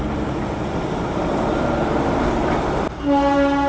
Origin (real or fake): real